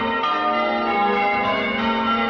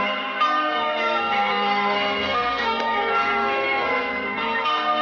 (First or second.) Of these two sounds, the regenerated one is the second